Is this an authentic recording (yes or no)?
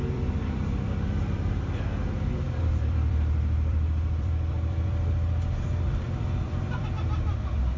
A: no